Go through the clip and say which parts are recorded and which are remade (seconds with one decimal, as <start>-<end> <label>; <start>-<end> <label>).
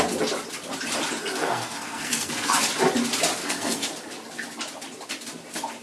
0.0-1.4 recorded; 1.4-2.6 remade; 2.6-3.4 recorded; 3.4-3.9 remade; 3.9-5.8 recorded